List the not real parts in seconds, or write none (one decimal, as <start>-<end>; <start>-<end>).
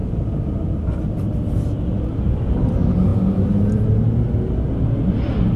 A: none